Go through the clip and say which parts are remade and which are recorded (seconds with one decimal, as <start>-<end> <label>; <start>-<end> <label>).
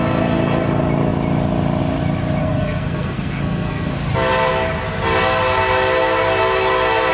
0.0-2.4 recorded; 2.4-3.9 remade; 3.9-7.1 recorded